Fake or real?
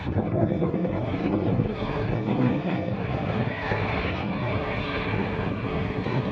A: fake